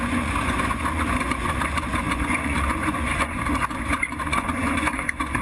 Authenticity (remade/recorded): remade